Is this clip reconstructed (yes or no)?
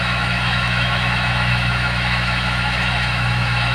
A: yes